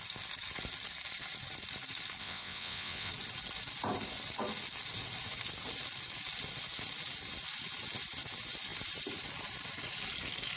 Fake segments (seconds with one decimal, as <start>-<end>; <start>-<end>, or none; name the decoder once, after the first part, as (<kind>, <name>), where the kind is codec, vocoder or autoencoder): 2.2-3.1 (vocoder, WaveNeXt)